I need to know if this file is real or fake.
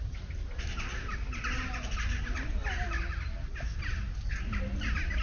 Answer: real